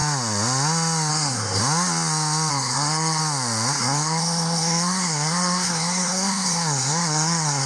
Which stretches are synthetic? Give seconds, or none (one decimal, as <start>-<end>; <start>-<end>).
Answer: 1.1-1.6; 2.5-3.2; 3.8-7.7